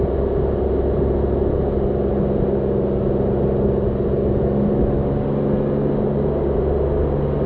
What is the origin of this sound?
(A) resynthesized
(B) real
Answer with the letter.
B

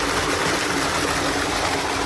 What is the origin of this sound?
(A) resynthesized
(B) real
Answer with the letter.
B